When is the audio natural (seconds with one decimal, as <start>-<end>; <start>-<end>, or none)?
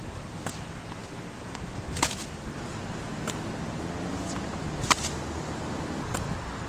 0.0-6.7